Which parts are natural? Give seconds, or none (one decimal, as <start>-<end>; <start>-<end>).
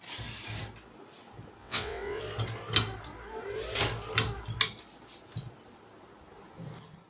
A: 0.0-1.6; 2.2-7.1